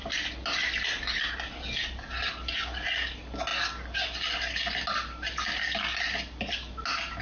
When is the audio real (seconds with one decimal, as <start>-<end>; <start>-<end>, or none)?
0.0-7.2

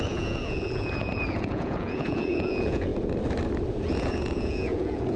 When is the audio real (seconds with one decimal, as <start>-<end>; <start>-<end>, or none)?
2.9-3.8

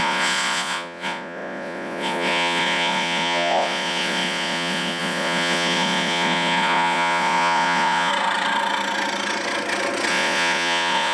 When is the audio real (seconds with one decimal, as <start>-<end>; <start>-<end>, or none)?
8.1-10.1